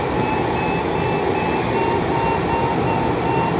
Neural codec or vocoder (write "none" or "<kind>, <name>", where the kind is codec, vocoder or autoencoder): none